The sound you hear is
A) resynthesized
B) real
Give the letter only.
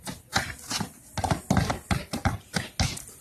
B